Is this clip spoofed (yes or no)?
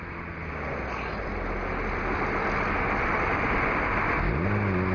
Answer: no